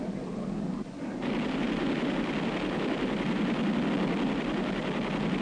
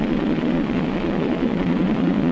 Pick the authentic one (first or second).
first